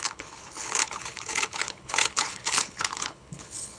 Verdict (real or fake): fake